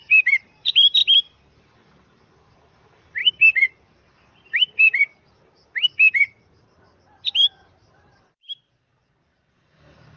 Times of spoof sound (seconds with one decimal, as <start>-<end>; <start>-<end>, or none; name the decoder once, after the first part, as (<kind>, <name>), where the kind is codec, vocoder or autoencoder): 0.0-1.0 (vocoder, BigVGAN v2); 2.5-6.9; 7.6-10.2